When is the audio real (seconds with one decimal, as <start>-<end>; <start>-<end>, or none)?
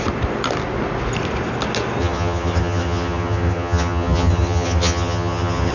0.0-2.0